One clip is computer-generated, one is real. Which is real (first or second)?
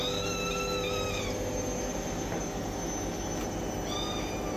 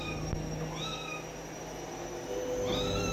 first